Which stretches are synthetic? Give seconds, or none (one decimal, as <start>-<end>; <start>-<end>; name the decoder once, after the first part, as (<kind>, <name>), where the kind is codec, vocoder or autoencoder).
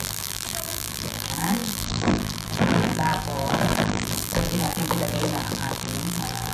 0.0-6.5 (vocoder, BigVGAN v2)